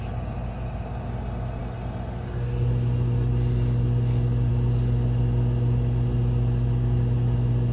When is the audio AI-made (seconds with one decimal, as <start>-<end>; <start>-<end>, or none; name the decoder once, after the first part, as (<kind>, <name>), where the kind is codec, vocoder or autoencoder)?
none